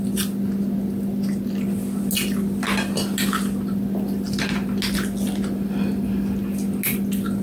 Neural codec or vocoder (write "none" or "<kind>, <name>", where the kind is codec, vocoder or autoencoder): none